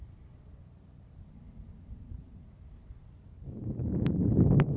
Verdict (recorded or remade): recorded